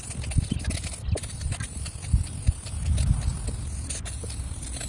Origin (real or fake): real